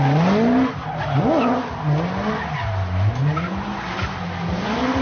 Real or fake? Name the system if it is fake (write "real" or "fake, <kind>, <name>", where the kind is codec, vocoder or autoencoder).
real